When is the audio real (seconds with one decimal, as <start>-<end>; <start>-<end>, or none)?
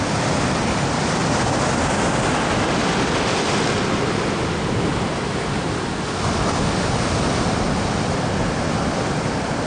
0.0-9.7